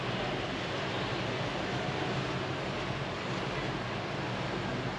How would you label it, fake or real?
real